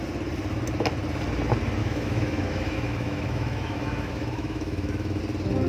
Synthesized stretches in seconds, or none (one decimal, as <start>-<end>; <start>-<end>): 1.8-5.2